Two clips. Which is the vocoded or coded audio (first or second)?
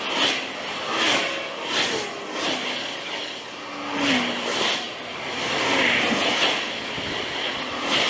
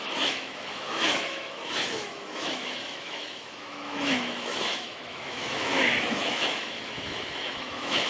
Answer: second